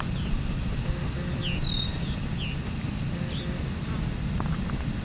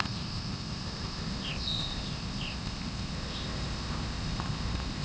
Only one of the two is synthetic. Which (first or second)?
second